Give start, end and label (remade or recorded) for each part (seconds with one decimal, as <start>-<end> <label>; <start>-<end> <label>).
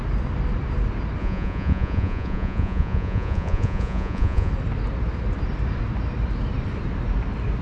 0.0-1.2 recorded; 1.2-4.5 remade; 4.5-7.6 recorded